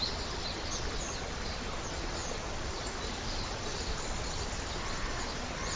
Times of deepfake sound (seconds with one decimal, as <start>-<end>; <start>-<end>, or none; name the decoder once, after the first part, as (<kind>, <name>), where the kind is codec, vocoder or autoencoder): 2.2-5.8 (vocoder, BigVGAN v2)